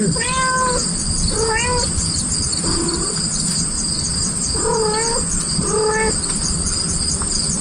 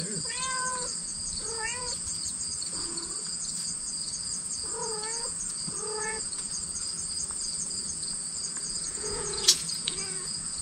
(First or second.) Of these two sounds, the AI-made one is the second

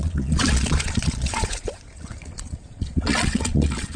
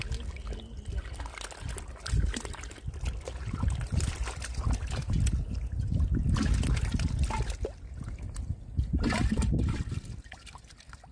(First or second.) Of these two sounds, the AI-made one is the first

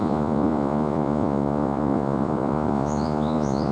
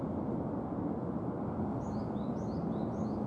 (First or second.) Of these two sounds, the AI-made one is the first